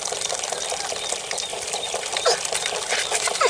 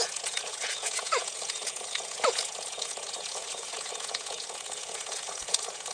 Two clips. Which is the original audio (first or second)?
first